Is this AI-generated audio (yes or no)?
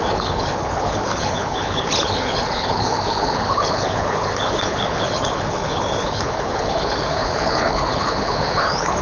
yes